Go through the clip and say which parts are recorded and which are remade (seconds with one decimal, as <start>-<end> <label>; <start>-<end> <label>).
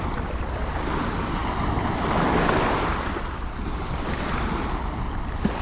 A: 0.0-1.4 remade; 1.4-3.6 recorded; 3.6-5.6 remade